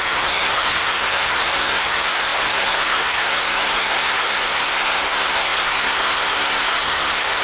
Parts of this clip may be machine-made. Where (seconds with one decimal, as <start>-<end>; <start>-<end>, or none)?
0.0-7.4